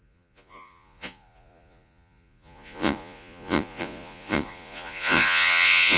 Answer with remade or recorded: remade